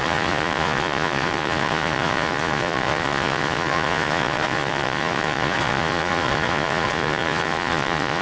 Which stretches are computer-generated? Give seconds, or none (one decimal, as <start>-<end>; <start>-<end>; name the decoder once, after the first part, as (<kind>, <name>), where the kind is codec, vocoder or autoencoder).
0.0-8.2 (vocoder, Vocos)